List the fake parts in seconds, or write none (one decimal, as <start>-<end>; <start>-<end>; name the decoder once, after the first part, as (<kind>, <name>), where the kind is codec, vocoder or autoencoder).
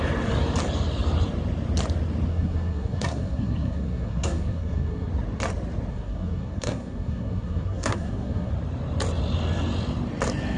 2.3-5.1 (codec, SNAC); 5.9-8.5